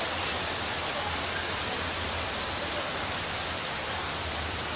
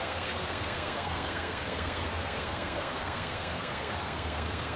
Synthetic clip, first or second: second